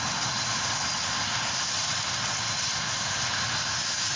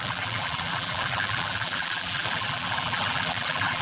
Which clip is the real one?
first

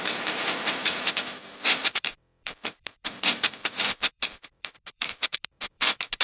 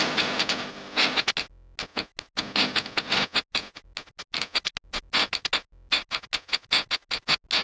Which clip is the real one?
second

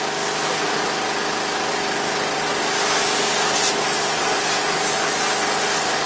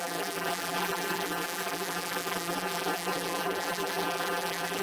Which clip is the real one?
first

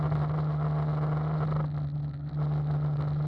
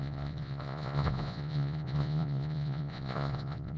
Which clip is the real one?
first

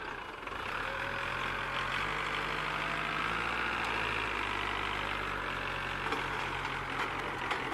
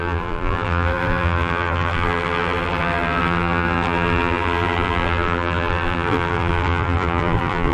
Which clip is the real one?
first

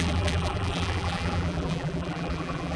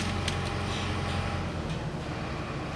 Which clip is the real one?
second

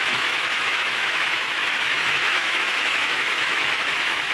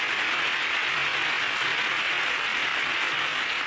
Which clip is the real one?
second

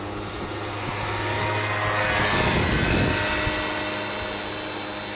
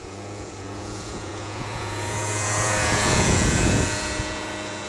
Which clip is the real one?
first